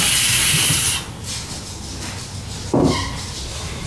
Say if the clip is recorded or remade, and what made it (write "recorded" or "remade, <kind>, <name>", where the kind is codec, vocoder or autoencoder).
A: recorded